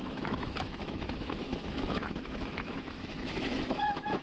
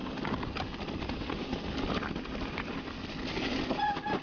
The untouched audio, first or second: second